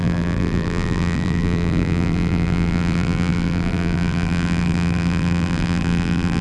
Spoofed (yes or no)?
yes